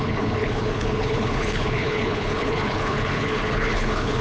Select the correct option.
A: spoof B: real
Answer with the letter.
A